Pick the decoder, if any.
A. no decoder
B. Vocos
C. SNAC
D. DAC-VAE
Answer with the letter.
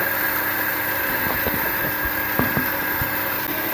A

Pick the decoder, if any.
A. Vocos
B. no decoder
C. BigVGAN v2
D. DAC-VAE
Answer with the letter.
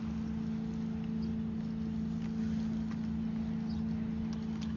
B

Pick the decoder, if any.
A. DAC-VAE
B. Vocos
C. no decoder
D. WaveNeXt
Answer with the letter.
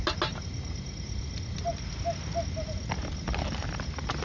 C